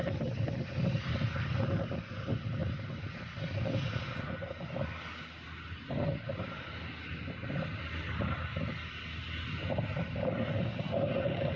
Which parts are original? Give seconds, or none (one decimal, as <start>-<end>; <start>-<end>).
2.0-11.6